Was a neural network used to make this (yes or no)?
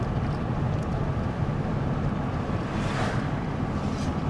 yes